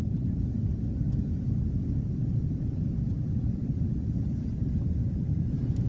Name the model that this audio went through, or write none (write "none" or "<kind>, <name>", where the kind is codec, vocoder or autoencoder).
none